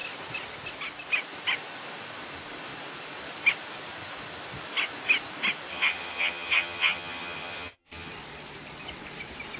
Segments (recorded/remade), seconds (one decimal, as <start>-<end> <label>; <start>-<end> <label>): 0.0-5.7 recorded; 5.7-8.1 remade; 8.1-9.6 recorded